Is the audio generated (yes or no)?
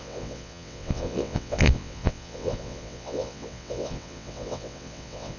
yes